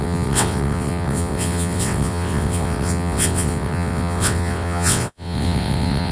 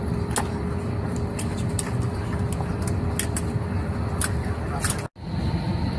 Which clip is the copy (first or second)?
first